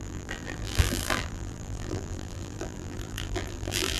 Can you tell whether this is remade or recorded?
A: remade